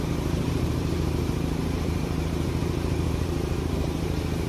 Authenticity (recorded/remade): remade